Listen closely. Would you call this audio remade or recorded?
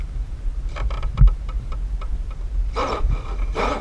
recorded